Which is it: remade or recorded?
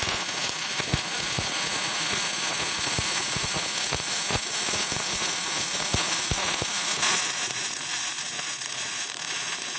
remade